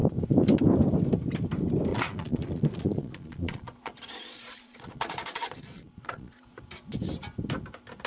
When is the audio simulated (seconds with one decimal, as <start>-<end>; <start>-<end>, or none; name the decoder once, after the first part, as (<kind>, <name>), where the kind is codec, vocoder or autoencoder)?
1.9-6.6 (vocoder, Vocos)